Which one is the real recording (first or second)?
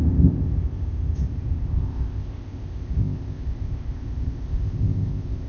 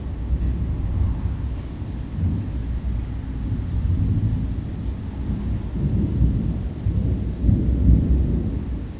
second